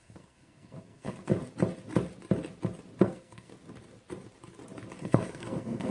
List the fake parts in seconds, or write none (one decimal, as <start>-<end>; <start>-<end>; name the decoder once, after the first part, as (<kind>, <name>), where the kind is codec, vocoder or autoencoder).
0.0-1.3 (codec, SNAC); 3.0-3.5; 5.0-5.9

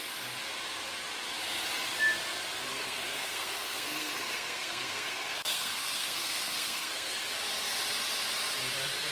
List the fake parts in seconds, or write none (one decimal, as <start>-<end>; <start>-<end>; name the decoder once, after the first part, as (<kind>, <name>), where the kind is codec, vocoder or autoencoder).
2.7-7.2 (codec, SNAC)